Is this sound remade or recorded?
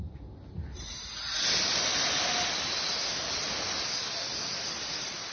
recorded